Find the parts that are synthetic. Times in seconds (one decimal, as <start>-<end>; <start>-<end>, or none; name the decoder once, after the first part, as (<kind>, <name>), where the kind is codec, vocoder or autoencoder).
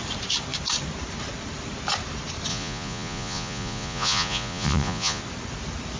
2.5-5.2 (vocoder, Vocos)